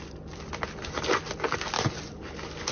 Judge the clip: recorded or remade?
recorded